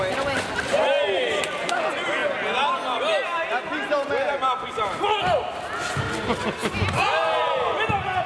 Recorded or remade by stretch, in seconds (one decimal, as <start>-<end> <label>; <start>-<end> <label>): 0.0-8.3 recorded